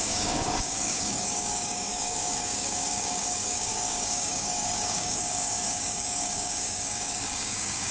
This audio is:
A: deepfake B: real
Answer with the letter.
A